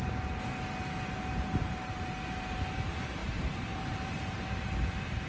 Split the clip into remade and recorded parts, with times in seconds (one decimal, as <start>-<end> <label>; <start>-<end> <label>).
0.0-1.3 recorded; 1.3-2.2 remade; 2.2-3.2 recorded; 3.2-4.4 remade; 4.4-5.3 recorded